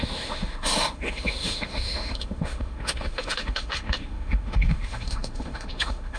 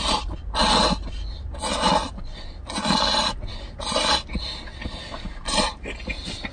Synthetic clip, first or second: first